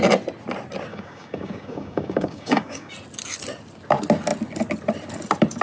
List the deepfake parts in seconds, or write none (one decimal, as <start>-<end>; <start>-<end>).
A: 0.9-2.9